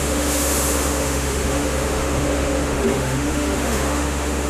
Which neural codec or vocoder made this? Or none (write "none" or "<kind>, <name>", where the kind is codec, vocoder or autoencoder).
autoencoder, DAC-VAE